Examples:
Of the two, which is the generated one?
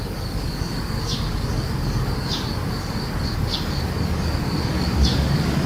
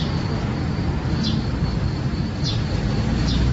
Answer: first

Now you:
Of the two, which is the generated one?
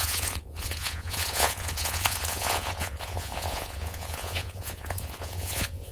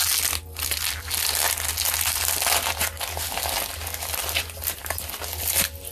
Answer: first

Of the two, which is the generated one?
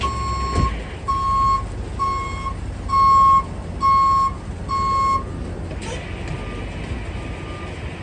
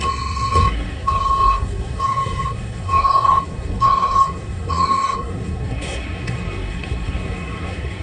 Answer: second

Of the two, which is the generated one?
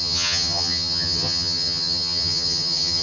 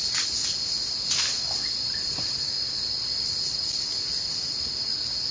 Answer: first